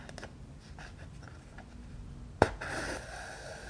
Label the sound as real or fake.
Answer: real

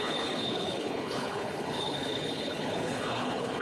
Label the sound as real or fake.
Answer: fake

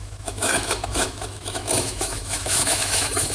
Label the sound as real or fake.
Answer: fake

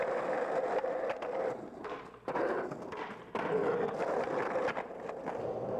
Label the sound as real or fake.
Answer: real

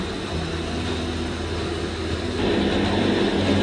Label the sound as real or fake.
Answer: real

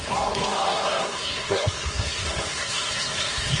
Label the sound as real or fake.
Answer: fake